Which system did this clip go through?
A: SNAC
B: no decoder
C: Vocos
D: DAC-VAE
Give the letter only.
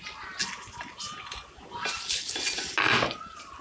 B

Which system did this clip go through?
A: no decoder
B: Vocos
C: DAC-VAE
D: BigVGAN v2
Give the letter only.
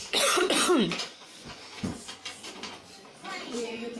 B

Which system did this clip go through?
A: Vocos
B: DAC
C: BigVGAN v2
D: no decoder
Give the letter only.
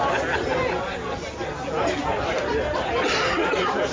D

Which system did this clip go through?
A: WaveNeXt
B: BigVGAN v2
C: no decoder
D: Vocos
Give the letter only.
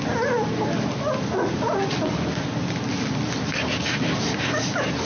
C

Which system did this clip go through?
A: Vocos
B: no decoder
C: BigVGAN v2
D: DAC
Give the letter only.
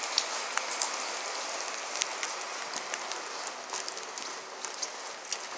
B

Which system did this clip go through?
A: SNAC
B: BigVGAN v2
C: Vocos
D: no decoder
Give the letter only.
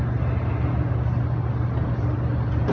D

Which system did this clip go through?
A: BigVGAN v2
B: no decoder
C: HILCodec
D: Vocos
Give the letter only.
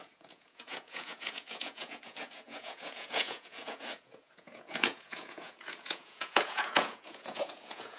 D